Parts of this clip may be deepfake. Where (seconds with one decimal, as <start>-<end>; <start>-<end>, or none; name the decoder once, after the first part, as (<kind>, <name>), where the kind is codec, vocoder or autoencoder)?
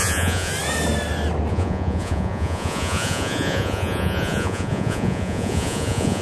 0.0-0.5 (vocoder, Vocos); 1.5-6.2